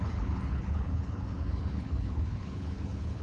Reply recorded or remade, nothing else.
remade